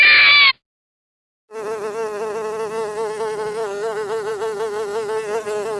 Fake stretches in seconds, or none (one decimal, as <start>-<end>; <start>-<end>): none

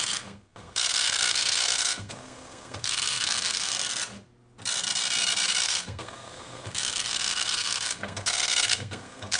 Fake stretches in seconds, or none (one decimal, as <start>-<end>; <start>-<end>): 0.0-3.7; 5.6-9.4